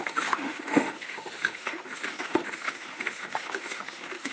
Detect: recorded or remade remade